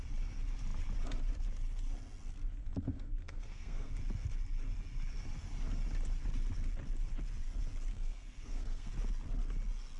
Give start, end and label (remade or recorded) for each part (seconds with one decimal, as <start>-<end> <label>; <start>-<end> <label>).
0.0-2.6 recorded; 2.6-3.9 remade; 3.9-7.9 recorded; 7.9-8.9 remade; 8.9-10.0 recorded